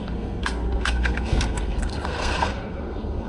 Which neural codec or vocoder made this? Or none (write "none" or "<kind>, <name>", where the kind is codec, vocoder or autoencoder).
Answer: codec, SNAC